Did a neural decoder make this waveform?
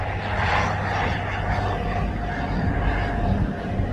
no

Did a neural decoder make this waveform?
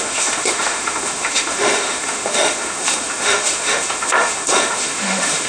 yes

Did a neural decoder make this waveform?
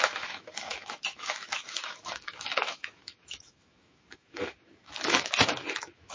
yes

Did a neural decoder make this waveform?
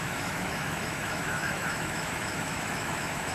yes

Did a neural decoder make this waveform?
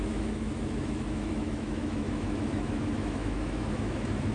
yes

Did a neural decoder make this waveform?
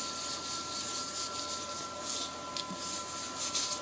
no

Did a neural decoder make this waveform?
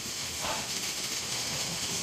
yes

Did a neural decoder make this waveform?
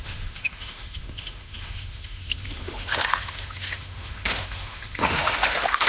yes